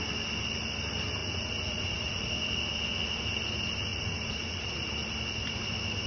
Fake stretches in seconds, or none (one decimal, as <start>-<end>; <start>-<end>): 1.2-2.3; 3.9-4.6